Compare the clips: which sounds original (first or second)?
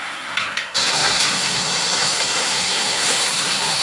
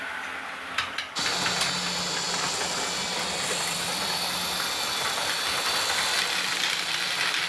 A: second